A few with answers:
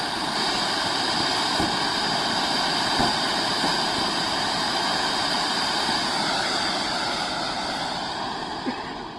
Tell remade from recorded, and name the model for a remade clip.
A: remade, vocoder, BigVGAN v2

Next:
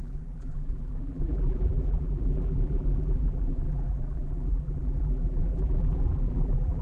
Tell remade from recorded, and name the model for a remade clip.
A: remade, vocoder, BigVGAN v2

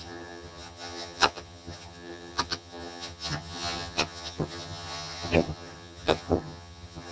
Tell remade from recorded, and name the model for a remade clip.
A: remade, vocoder, HiFi-GAN